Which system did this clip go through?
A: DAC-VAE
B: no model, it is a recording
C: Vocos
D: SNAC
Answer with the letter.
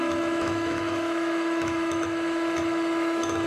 A